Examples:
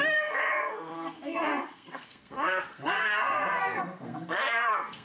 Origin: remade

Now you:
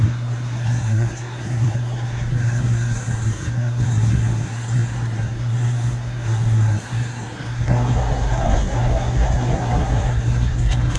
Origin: remade